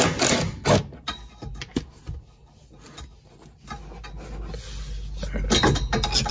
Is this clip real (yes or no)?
yes